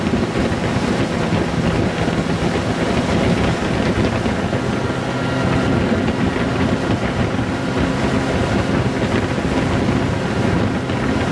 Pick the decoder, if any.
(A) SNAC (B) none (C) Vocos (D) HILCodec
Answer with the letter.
B